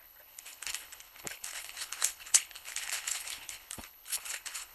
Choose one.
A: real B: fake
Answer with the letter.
B